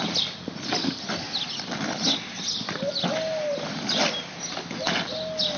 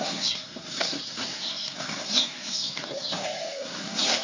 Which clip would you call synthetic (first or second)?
second